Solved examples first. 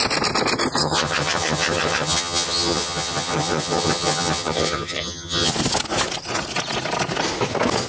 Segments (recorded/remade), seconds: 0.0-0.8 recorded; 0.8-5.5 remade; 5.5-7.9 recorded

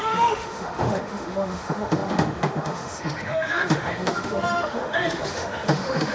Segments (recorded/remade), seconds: 0.0-6.1 remade

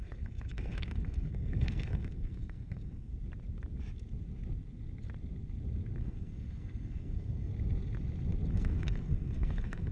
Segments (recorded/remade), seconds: 0.0-3.1 remade; 3.1-6.0 recorded; 6.0-7.5 remade; 7.5-8.5 recorded; 8.5-9.9 remade

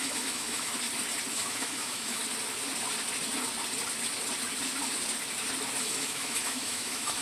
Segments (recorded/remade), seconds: 0.0-0.7 remade; 0.7-1.3 recorded; 1.3-2.2 remade; 2.2-5.8 recorded; 5.8-7.2 remade

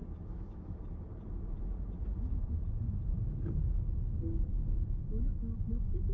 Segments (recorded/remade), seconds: 0.0-0.8 remade; 0.8-2.0 recorded; 2.0-3.6 remade; 3.6-4.5 recorded; 4.5-5.3 remade; 5.3-6.1 recorded